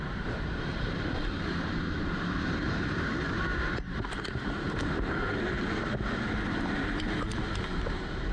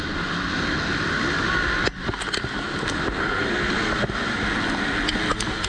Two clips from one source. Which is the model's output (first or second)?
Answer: first